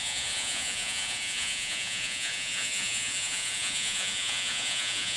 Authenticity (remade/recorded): remade